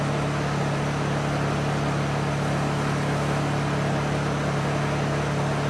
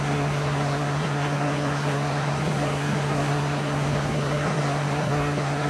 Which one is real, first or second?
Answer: first